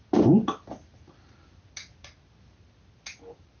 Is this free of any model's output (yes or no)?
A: yes